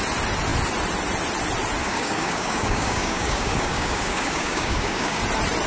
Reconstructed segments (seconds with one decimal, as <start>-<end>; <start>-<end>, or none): 1.8-5.2